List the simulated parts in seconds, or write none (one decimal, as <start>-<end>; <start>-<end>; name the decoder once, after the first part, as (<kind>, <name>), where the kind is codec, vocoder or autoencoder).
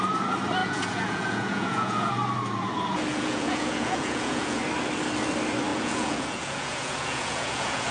0.6-2.1 (vocoder, Vocos); 3.1-4.6; 5.7-7.9